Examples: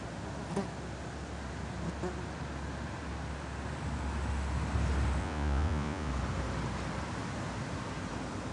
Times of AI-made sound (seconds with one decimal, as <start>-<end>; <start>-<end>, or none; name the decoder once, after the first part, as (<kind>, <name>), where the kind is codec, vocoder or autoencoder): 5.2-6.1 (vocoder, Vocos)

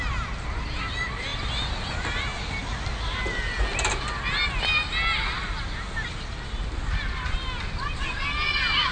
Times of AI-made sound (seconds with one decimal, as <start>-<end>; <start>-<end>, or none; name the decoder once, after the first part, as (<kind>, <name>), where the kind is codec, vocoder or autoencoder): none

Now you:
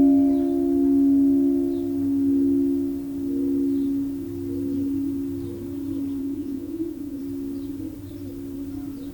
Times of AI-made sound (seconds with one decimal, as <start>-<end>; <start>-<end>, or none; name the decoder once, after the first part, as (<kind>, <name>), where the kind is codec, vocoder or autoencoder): 6.2-7.2 (vocoder, Vocos)

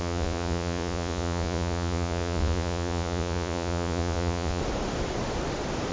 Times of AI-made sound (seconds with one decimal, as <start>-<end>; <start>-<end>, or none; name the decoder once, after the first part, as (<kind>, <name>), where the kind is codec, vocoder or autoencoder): 0.0-4.6 (vocoder, Vocos)

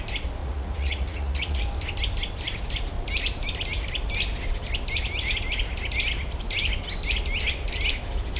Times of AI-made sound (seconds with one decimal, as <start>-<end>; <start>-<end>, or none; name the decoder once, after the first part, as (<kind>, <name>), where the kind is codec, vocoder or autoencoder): 0.4-1.6 (vocoder, Vocos)

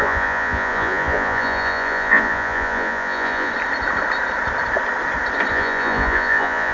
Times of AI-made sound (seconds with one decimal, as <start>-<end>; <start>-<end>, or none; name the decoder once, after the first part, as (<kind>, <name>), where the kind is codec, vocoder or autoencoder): 0.0-3.5 (vocoder, Vocos); 5.5-6.7